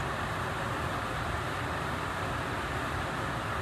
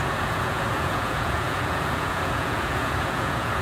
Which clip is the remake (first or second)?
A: second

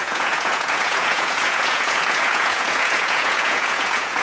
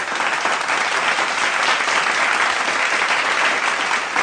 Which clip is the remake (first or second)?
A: first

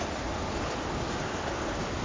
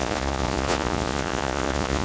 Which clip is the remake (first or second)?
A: second